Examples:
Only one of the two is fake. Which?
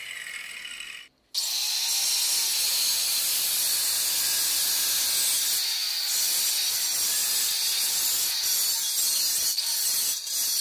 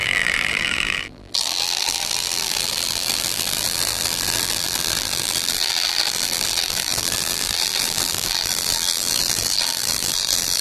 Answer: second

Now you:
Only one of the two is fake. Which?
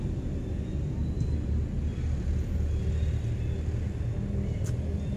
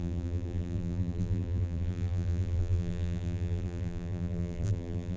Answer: second